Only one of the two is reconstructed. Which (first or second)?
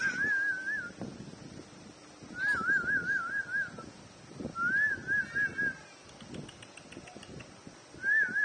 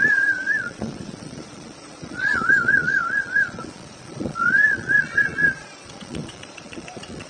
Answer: second